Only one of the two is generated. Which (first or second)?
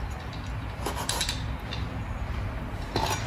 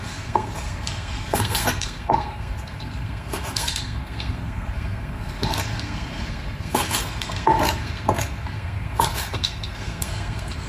second